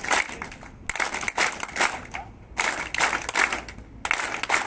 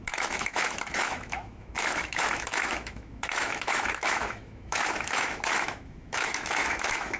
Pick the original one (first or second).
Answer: first